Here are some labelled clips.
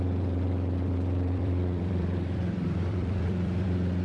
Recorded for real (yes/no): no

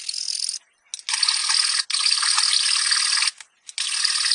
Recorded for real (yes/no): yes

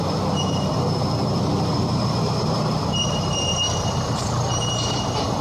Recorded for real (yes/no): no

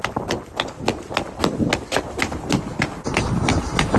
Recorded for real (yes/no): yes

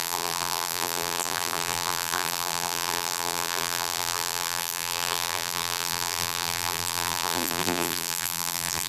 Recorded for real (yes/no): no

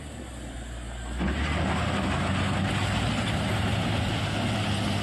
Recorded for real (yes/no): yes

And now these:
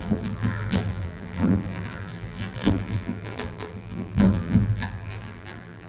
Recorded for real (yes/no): no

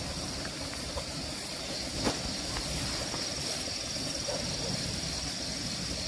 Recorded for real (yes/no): no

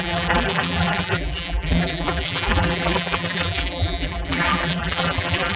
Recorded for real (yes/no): no